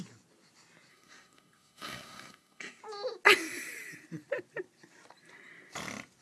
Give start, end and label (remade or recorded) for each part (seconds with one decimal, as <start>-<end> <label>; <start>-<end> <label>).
0.0-0.9 recorded; 0.9-2.8 remade; 2.8-6.2 recorded